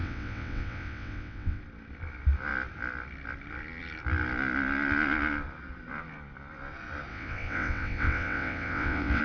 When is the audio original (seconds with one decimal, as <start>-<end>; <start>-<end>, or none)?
1.6-7.1